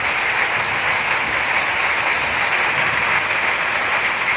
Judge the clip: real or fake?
real